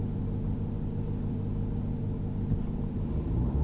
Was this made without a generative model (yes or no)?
yes